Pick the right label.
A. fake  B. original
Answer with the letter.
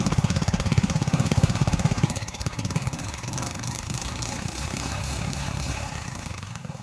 A